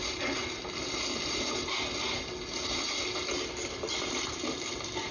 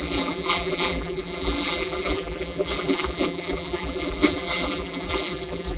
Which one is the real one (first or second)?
first